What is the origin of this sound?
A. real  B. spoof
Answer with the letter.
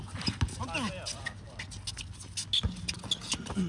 A